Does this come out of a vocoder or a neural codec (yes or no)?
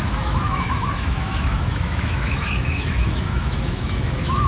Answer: yes